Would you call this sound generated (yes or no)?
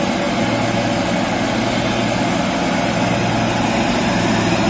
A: no